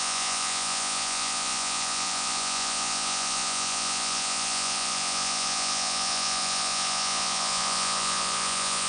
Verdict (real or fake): fake